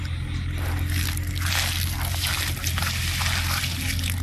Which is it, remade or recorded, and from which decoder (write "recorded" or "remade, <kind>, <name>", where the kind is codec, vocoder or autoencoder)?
recorded